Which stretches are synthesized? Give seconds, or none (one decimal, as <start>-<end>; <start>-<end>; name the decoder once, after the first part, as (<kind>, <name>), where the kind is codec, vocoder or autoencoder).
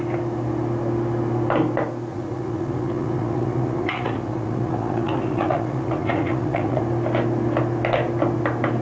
2.1-6.8 (vocoder, Vocos)